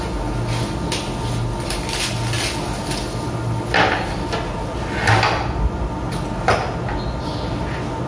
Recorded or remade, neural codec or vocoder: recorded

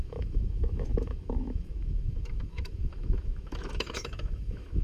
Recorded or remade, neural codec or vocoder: remade, autoencoder, DAC-VAE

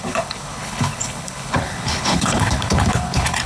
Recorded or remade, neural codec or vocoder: remade, codec, HILCodec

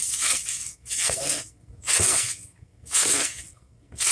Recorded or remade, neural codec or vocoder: remade, codec, SNAC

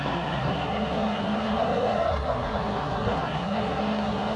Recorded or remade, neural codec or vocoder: remade, codec, SNAC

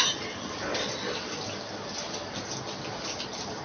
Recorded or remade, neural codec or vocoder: recorded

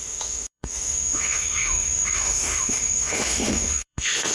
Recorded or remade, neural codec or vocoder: remade, autoencoder, DAC-VAE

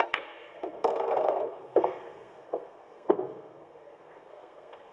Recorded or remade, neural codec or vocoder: remade, codec, SNAC